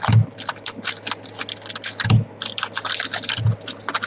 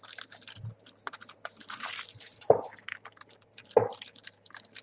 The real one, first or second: first